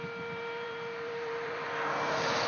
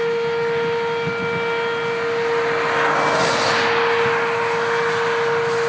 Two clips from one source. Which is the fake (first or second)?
first